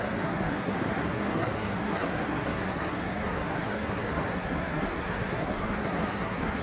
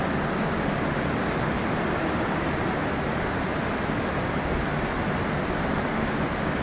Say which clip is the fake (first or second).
first